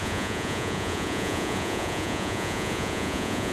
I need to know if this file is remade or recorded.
remade